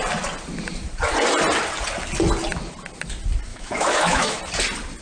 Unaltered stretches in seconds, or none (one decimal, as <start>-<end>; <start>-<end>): 0.0-3.5; 4.4-5.0